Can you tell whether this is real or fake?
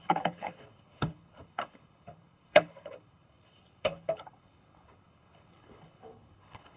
fake